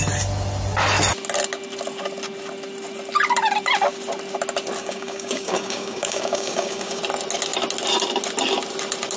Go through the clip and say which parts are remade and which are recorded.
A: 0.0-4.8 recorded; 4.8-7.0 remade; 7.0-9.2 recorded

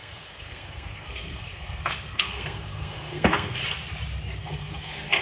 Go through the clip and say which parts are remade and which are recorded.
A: 0.0-3.6 remade; 3.6-4.4 recorded; 4.4-5.2 remade

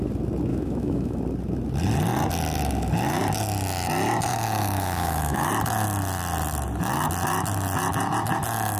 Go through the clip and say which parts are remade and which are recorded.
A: 0.0-0.5 recorded; 0.5-1.2 remade; 1.2-4.3 recorded; 4.3-5.5 remade; 5.5-8.8 recorded

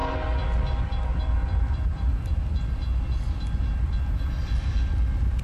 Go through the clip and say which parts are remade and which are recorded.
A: 0.0-0.8 recorded; 0.8-2.1 remade; 2.1-5.4 recorded

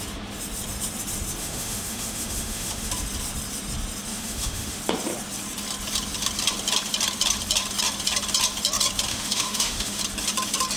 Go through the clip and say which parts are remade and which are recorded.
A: 0.0-1.4 recorded; 1.4-2.9 remade; 2.9-4.1 recorded; 4.1-4.8 remade; 4.8-9.1 recorded; 9.1-10.0 remade; 10.0-10.8 recorded

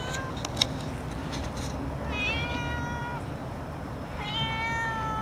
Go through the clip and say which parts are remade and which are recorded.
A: 0.0-1.2 recorded; 1.2-1.9 remade; 1.9-3.0 recorded; 3.0-4.3 remade; 4.3-5.2 recorded